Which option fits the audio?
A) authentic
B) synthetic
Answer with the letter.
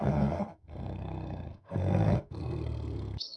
B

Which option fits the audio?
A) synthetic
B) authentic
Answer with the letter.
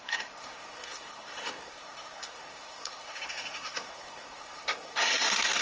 A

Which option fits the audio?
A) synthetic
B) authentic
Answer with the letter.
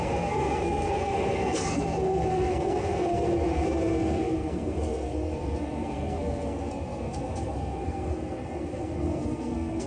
A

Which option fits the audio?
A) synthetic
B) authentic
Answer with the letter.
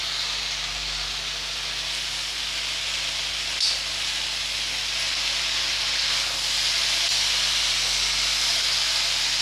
B